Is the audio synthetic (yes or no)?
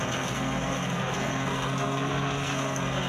yes